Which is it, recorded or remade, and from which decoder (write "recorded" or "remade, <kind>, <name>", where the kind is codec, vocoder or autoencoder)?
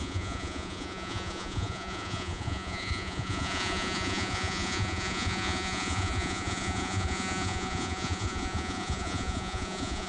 remade, vocoder, Vocos